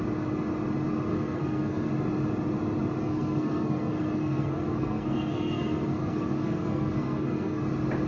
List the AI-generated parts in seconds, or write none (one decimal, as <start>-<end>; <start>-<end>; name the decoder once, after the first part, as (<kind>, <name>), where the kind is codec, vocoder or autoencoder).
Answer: 1.1-1.9 (codec, SNAC); 3.0-7.6